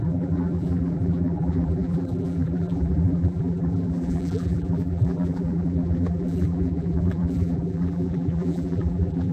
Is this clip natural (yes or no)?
no